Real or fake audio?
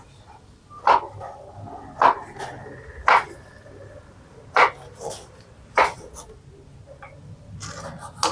real